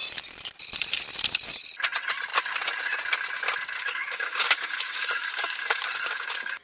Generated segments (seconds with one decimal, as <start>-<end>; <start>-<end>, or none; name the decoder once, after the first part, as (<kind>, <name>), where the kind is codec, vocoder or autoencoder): 3.7-6.6 (codec, DAC)